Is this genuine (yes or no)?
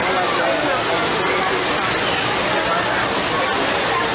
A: yes